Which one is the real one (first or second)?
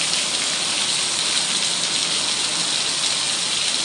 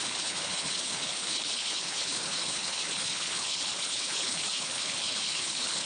first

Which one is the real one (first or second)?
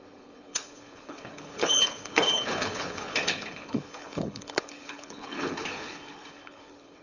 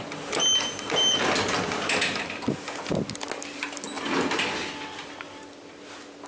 second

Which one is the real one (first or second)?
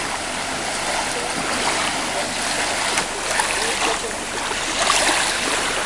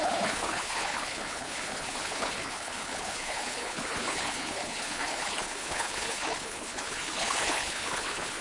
first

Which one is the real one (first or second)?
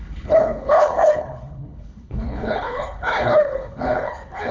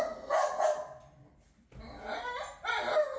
second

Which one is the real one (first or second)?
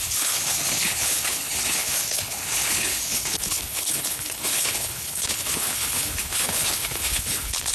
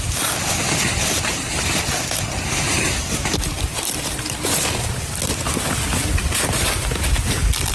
second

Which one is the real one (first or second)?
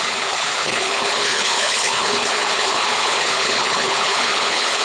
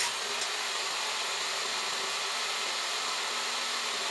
second